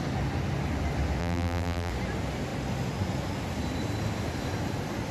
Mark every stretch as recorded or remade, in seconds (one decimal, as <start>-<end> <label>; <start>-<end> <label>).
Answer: 0.0-1.2 recorded; 1.2-1.9 remade; 1.9-5.1 recorded